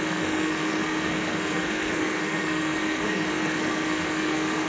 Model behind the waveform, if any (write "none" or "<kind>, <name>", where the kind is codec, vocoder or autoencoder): codec, SNAC